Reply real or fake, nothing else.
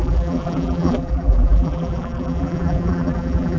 fake